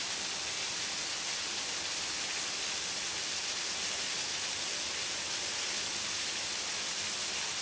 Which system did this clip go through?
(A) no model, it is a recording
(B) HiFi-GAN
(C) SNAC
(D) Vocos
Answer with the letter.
A